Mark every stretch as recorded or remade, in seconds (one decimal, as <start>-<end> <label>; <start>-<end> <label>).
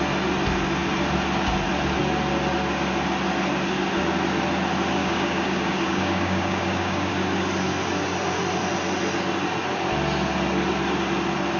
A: 0.0-5.0 recorded; 5.0-7.1 remade; 7.1-11.6 recorded